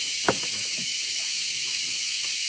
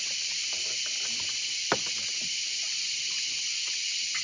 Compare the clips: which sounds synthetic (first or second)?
first